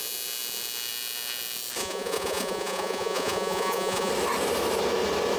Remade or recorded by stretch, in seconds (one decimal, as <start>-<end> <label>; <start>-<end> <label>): 0.0-1.8 recorded; 1.8-4.1 remade; 4.1-5.4 recorded